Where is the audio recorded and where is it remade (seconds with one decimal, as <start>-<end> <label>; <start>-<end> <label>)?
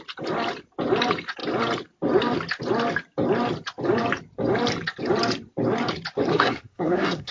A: 0.0-6.3 recorded; 6.3-7.3 remade